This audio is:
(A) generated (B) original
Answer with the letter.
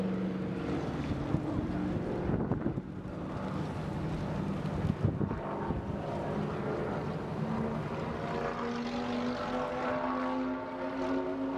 B